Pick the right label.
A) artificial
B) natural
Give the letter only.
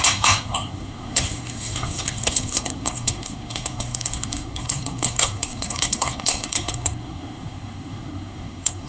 A